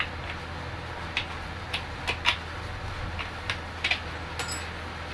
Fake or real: real